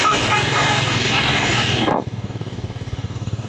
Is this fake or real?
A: fake